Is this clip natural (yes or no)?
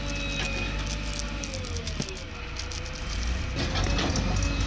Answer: yes